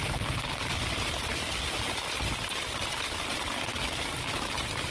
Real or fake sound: real